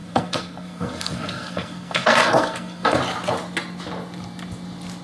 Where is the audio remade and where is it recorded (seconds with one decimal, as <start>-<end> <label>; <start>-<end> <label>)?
0.0-3.0 remade; 3.0-5.0 recorded